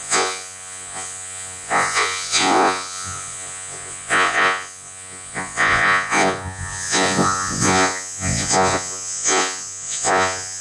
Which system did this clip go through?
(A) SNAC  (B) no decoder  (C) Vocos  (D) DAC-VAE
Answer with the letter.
C